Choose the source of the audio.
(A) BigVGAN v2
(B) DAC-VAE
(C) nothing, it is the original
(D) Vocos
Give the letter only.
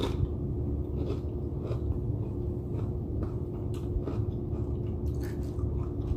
C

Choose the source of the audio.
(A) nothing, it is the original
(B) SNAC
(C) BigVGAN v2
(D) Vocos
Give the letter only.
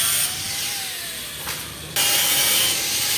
C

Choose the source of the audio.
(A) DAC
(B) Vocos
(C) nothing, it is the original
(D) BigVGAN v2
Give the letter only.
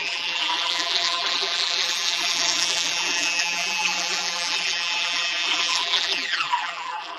D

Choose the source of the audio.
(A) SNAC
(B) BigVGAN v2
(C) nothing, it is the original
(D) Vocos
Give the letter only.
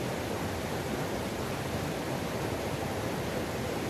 C